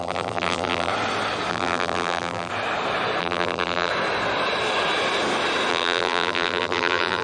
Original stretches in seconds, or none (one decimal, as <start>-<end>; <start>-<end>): 0.9-1.5; 2.5-3.2; 3.9-5.7